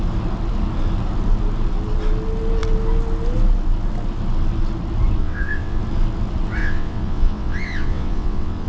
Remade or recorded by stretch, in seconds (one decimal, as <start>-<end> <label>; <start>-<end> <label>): 0.0-5.2 recorded; 5.2-5.8 remade; 5.8-6.6 recorded; 6.6-8.7 remade